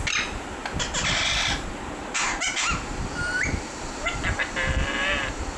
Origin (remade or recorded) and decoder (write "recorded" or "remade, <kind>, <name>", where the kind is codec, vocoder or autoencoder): recorded